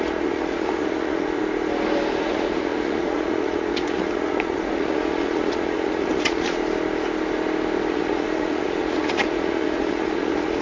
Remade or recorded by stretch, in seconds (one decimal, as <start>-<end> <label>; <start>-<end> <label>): 0.0-1.4 remade; 1.4-2.2 recorded; 2.2-6.6 remade; 6.6-7.9 recorded; 7.9-10.6 remade